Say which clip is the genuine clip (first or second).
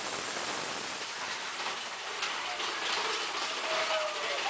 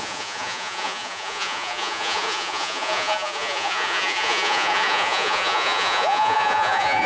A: first